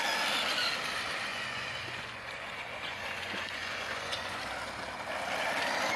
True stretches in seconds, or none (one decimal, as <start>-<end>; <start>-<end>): 0.0-1.3; 4.4-6.0